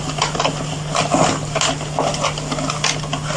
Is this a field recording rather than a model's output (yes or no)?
yes